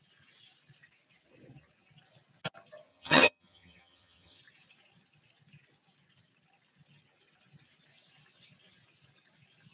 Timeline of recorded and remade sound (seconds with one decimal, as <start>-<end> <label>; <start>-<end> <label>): 0.0-2.9 recorded; 2.9-4.4 remade; 4.4-9.7 recorded